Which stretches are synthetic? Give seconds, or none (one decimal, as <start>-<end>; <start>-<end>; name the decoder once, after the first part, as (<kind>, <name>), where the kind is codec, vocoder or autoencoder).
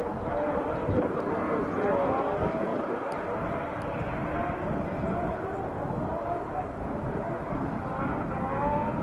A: 0.0-1.4 (vocoder, BigVGAN v2); 2.7-7.8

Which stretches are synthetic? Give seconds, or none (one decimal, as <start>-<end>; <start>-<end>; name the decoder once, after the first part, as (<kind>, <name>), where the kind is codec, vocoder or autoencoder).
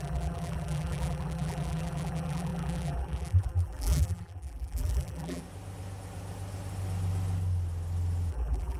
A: 0.0-5.4 (vocoder, BigVGAN v2); 8.3-8.8